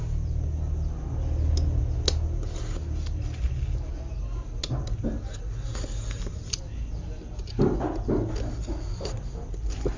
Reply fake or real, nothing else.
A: real